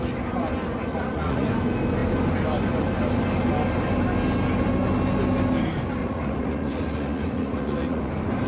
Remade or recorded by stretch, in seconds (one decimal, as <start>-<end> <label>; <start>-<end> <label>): 0.0-0.9 recorded; 0.9-1.5 remade; 1.5-6.0 recorded; 6.0-8.1 remade; 8.1-8.5 recorded